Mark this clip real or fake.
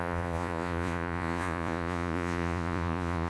fake